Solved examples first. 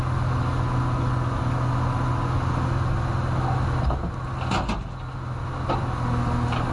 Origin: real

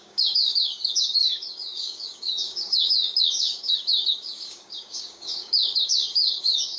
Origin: fake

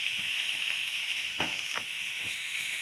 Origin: fake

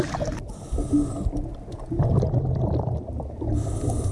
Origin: real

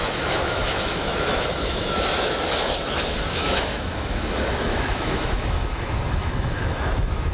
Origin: fake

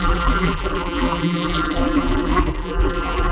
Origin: fake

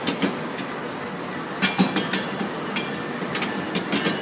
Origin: real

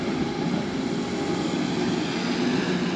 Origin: real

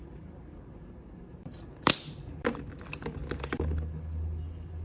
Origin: real